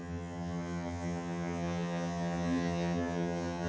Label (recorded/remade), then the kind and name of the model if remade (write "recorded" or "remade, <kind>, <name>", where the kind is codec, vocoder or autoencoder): remade, vocoder, HiFi-GAN